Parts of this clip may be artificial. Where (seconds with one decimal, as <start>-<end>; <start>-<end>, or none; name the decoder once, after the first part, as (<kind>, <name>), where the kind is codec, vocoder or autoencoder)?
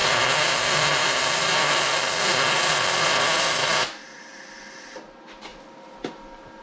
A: none